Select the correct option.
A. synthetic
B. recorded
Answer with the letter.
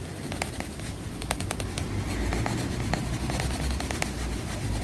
B